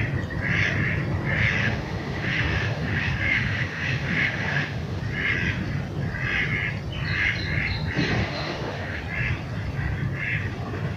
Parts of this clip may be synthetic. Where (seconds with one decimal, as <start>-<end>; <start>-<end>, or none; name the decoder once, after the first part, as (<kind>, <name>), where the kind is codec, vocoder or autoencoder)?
1.6-5.0 (autoencoder, DAC-VAE); 8.2-9.0